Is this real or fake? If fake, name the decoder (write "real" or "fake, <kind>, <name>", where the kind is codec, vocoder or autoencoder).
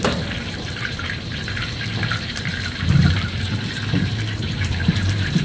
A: fake, vocoder, BigVGAN v2